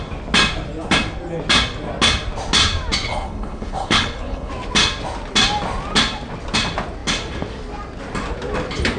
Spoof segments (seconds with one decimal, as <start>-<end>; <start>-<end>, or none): 3.1-4.5

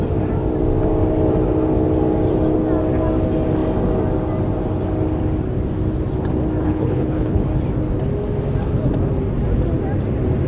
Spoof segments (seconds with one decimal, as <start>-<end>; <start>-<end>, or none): 6.6-7.4

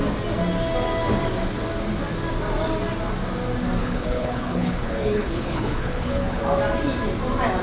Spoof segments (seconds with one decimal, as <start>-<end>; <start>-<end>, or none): 3.8-6.4

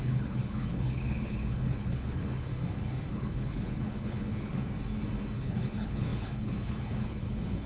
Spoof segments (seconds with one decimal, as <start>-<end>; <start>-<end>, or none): 0.0-2.5; 3.1-4.6; 5.4-7.7

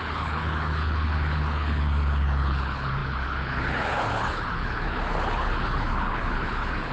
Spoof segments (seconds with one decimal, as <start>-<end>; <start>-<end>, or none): 0.0-6.9